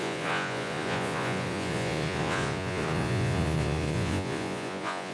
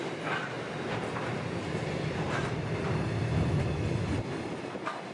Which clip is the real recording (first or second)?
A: second